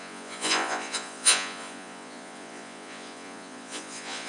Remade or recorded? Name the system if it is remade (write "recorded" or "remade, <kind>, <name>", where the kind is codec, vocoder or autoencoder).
remade, vocoder, Vocos